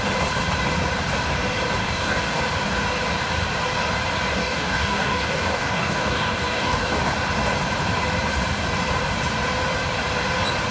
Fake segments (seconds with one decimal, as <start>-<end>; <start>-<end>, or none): 1.8-2.4; 4.4-6.9